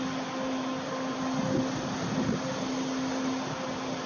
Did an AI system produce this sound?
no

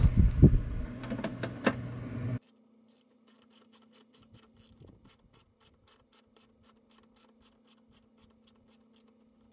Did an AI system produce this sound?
no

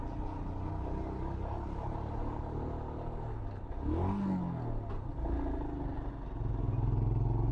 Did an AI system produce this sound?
no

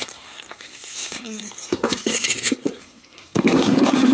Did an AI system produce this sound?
yes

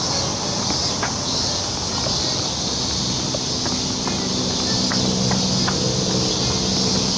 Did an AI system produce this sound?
no